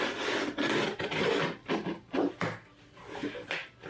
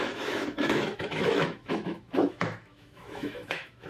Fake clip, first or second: second